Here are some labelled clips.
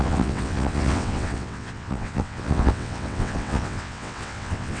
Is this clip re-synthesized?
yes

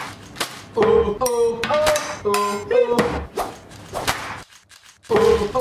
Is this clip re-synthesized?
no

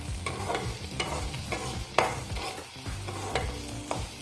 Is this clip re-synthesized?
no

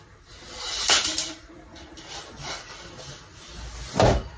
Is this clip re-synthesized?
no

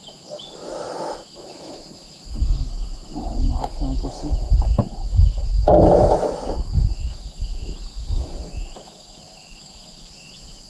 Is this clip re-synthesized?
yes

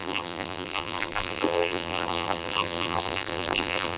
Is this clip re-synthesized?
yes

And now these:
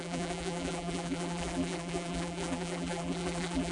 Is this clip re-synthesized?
yes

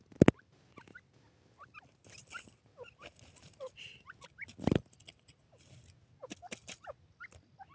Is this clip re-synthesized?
no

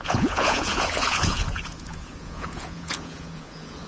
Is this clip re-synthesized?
yes